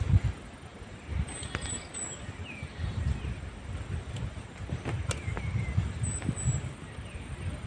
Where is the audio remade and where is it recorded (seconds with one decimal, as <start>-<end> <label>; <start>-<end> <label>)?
0.0-7.7 recorded